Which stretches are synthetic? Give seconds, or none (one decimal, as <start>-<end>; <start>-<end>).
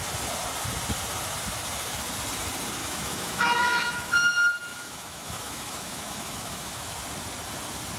2.8-4.1; 4.7-6.9